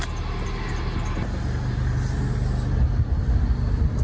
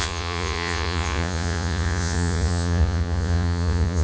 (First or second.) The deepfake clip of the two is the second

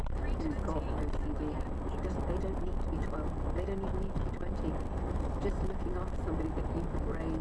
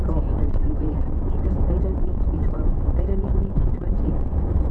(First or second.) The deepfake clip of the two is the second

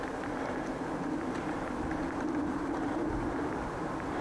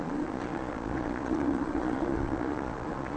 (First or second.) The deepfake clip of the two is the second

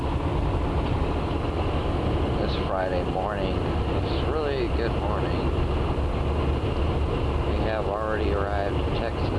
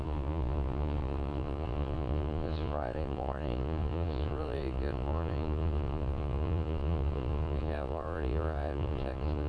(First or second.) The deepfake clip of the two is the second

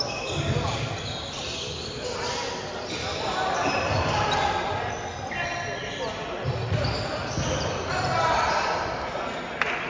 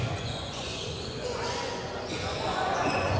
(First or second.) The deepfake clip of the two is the second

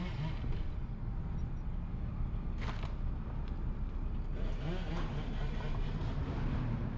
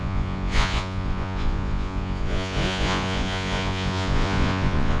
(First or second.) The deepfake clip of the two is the second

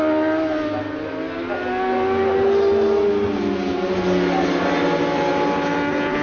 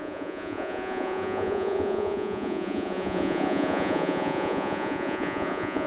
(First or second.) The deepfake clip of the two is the second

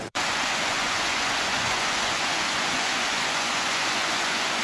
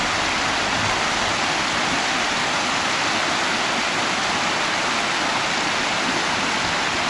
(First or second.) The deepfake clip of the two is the first